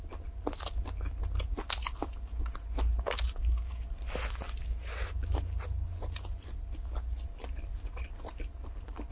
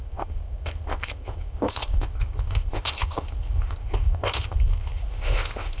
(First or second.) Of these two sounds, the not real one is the second